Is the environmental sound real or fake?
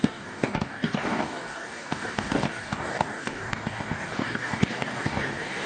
fake